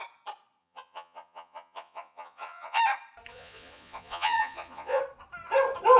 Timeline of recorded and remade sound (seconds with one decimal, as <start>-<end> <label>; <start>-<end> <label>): 0.0-0.6 recorded; 0.6-2.8 remade; 2.8-3.3 recorded; 3.3-5.0 remade; 5.0-6.0 recorded